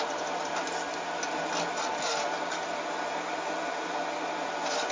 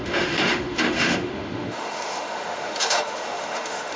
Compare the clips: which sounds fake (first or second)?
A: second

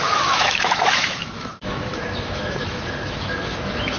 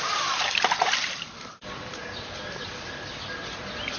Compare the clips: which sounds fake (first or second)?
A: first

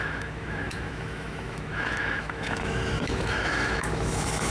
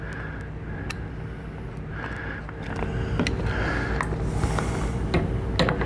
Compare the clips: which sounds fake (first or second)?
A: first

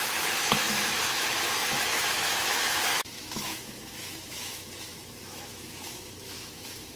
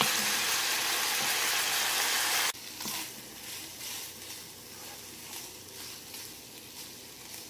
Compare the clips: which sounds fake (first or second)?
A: first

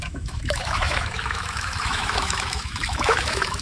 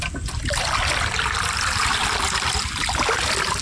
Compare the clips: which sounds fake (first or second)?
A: first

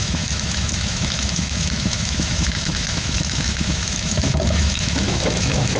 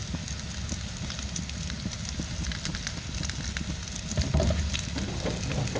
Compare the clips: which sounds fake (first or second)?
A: first